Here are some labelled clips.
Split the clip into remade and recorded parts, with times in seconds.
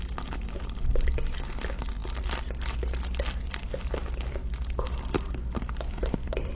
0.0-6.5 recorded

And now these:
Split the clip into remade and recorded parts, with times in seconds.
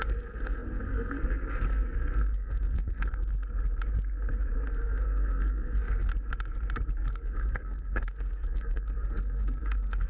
0.0-3.3 remade; 3.3-4.7 recorded; 4.7-6.1 remade; 6.1-7.1 recorded; 7.1-10.1 remade